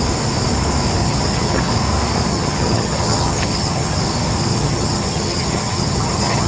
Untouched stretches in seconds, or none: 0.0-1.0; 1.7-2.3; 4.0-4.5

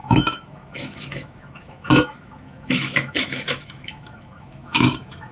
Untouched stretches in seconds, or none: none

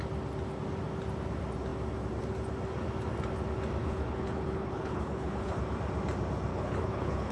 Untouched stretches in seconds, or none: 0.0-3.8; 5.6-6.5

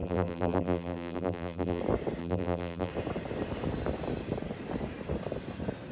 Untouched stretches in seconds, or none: 1.8-2.2; 2.9-5.9

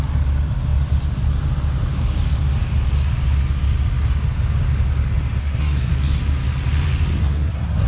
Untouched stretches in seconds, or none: 0.0-5.4; 5.9-7.2

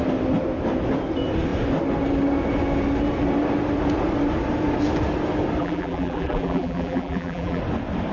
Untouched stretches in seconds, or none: 0.0-5.6; 7.6-8.1